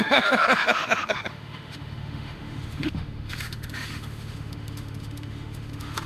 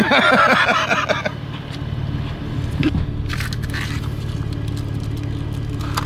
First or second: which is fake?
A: first